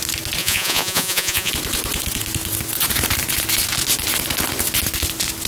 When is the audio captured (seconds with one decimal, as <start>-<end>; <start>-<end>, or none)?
0.0-0.4; 1.5-5.5